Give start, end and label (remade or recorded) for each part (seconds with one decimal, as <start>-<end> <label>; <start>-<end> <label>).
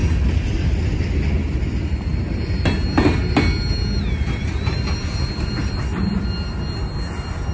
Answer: 0.0-7.5 recorded